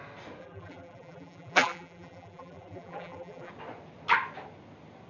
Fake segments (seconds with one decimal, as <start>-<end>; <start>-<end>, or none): 0.4-3.5